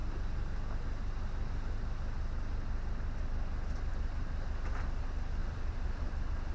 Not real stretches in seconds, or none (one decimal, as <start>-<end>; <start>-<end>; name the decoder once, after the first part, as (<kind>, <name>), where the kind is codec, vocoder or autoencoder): 5.4-6.1 (vocoder, BigVGAN v2)